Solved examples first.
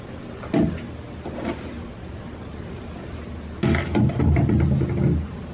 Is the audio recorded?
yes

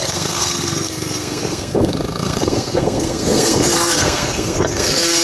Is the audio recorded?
no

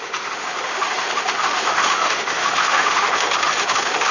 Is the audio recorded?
no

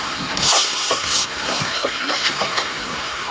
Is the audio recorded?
no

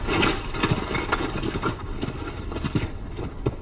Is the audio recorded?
yes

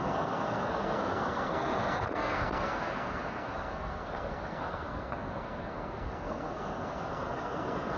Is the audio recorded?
no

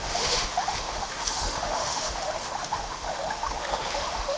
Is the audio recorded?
no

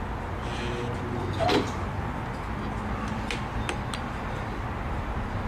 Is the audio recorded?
yes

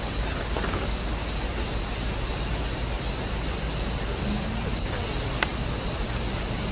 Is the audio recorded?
yes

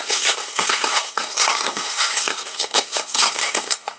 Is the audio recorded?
no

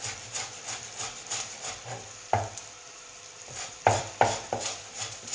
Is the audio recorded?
no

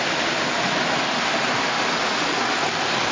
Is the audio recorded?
yes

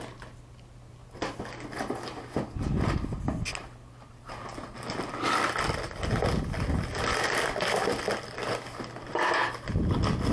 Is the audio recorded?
yes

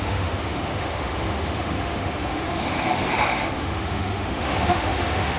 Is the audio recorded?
no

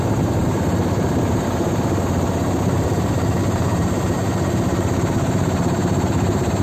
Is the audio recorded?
no